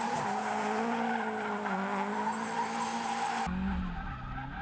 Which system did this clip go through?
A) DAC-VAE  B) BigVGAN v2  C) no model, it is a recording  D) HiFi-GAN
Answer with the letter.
C